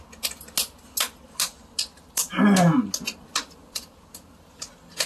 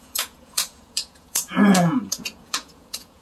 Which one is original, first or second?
first